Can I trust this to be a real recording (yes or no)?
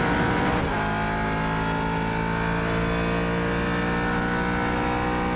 yes